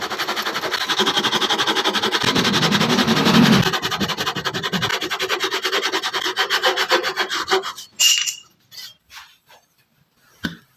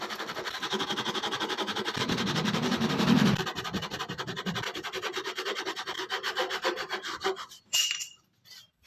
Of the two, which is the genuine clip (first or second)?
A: first